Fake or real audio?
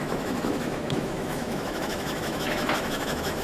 fake